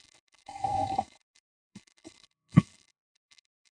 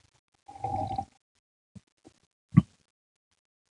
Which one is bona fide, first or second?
second